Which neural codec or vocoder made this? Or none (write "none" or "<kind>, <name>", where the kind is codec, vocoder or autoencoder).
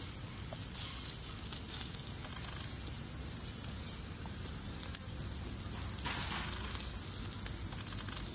none